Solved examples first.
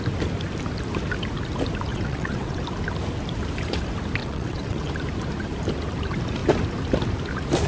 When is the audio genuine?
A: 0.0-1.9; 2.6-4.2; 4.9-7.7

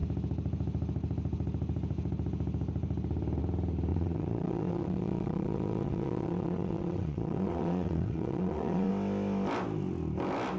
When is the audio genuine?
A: 0.0-3.9; 8.9-10.6

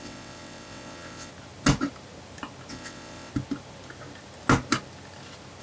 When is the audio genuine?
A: 1.3-2.7; 3.3-5.6

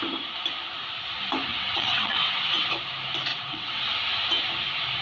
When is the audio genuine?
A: 0.0-1.5; 2.7-3.3; 3.8-5.0

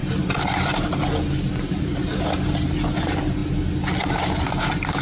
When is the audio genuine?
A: 0.0-5.0

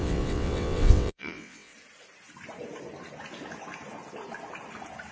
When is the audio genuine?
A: 1.7-5.1